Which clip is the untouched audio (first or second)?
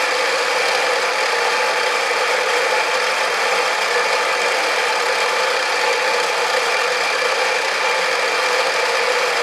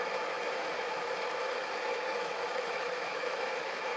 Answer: first